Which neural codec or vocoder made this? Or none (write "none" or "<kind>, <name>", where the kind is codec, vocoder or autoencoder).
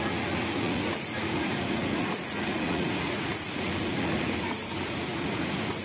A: vocoder, Vocos